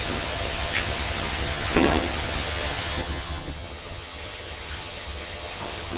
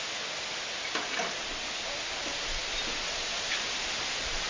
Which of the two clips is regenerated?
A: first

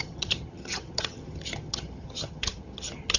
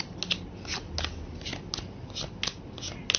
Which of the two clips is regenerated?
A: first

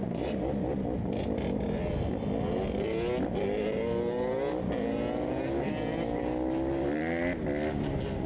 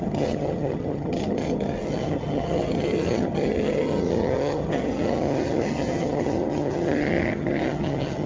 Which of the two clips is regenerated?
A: second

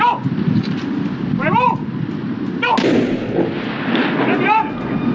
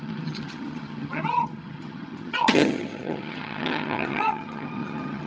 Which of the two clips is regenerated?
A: second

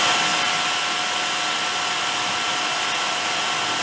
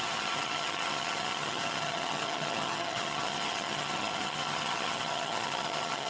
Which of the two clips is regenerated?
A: second